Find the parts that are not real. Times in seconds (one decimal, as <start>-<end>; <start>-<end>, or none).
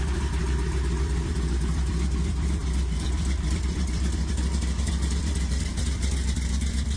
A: 0.0-7.0